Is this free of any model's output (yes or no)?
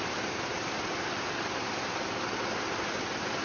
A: yes